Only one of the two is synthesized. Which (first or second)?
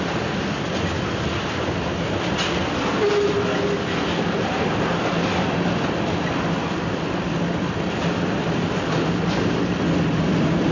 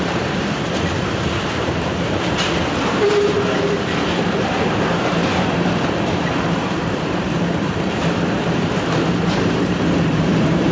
second